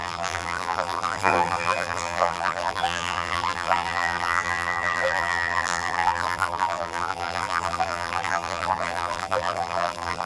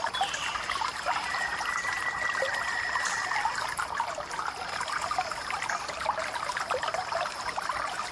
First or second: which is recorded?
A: second